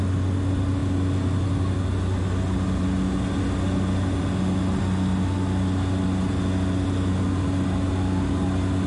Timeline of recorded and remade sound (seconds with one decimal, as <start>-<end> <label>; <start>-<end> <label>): 0.0-8.9 recorded